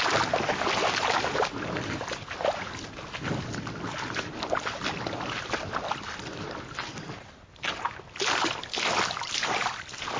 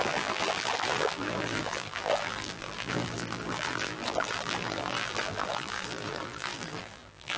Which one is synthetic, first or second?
second